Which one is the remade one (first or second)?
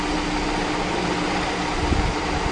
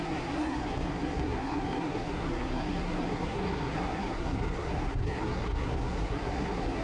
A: second